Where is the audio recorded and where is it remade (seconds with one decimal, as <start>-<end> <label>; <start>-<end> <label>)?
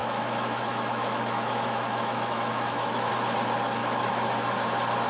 0.0-3.1 remade; 3.1-3.8 recorded; 3.8-4.3 remade; 4.3-5.1 recorded